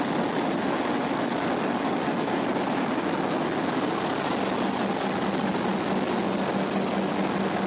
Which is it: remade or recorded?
recorded